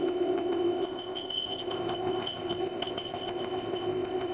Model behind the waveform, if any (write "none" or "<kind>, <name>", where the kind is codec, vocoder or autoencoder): codec, ZipCodec